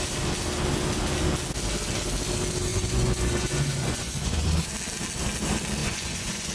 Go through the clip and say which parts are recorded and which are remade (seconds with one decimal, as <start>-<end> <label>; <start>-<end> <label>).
0.0-2.7 recorded; 2.7-4.7 remade; 4.7-5.8 recorded; 5.8-6.5 remade